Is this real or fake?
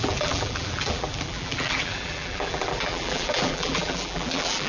fake